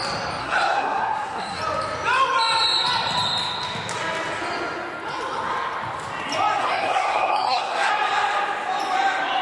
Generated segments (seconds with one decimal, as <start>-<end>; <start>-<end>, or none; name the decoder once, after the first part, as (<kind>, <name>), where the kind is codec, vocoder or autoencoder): 0.4-1.6 (codec, SNAC); 6.6-7.9